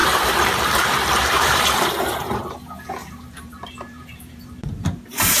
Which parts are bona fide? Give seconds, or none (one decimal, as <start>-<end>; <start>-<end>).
2.4-3.0